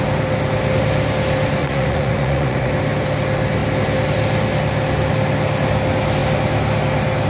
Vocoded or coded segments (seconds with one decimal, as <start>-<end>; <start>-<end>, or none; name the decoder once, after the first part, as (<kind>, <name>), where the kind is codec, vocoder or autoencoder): 1.6-2.7 (vocoder, Vocos)